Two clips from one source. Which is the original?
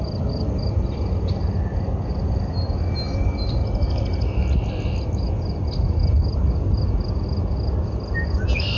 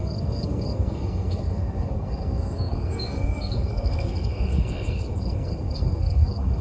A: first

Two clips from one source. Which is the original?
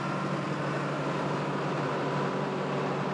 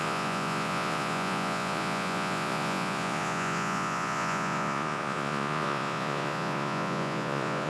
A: first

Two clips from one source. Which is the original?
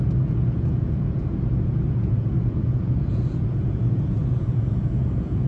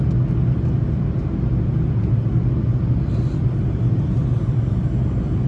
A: second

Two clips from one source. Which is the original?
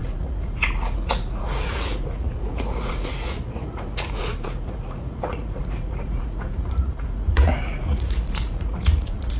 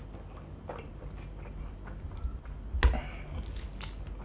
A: second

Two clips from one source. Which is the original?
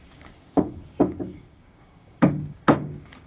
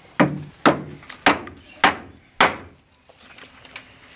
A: second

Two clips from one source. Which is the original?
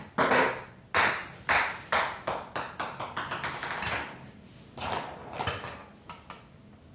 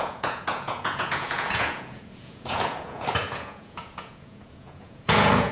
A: first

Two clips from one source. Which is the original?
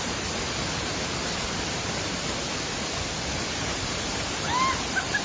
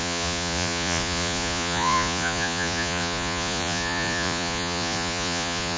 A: first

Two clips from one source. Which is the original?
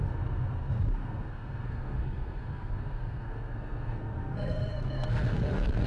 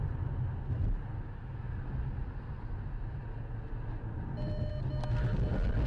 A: second